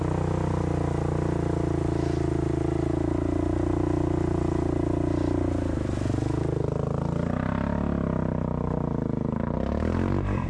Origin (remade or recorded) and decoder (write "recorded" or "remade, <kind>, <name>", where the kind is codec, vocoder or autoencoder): recorded